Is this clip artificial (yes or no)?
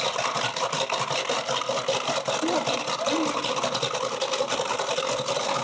no